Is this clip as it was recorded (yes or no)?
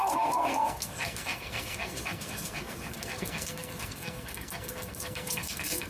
no